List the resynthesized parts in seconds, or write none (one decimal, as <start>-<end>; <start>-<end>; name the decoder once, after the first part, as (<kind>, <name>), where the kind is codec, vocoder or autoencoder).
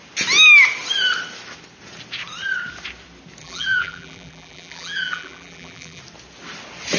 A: 3.4-6.0 (vocoder, BigVGAN v2)